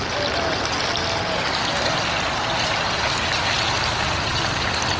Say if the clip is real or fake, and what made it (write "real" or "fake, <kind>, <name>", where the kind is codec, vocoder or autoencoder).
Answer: real